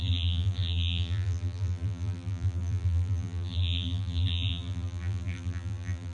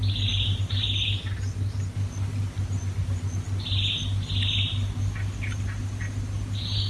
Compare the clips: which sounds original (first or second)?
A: second